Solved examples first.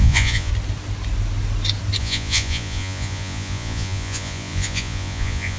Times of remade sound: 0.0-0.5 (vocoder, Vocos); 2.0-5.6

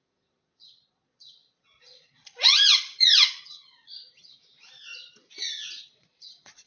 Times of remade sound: 0.0-3.9 (vocoder, Vocos); 5.8-6.7

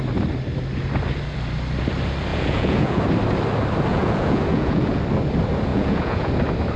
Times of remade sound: 2.3-3.0 (vocoder, Vocos); 3.9-5.0; 5.7-6.3

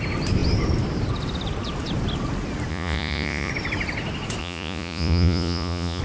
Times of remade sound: 2.7-3.5 (vocoder, Vocos); 4.4-6.0

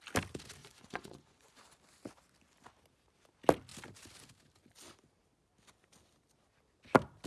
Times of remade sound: 0.6-1.6 (vocoder, Vocos)

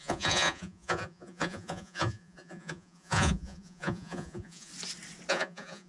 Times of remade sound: 0.0-4.7 (vocoder, Vocos); 5.3-5.9